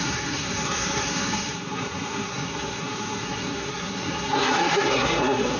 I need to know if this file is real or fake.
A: fake